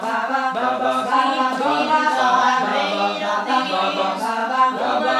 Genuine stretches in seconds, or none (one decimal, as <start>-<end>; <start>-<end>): 2.7-3.5